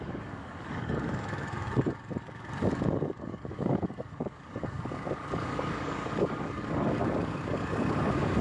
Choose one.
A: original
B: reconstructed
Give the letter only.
B